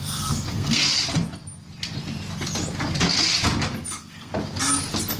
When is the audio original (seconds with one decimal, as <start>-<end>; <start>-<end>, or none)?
0.8-3.9; 4.3-5.2